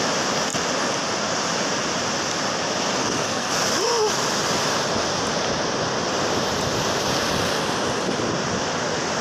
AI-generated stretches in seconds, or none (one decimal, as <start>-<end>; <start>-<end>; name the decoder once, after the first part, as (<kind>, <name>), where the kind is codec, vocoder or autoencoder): 3.0-3.5 (codec, SNAC)